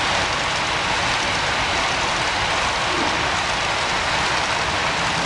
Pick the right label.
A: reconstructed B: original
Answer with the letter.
B